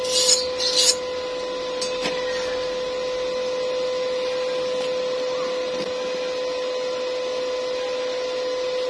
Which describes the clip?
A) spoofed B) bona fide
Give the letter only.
B